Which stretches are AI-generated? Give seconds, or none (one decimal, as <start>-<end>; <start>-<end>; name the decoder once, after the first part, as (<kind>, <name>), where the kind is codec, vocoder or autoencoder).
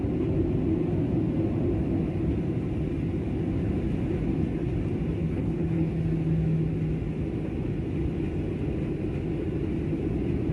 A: 5.2-6.0 (codec, HILCodec)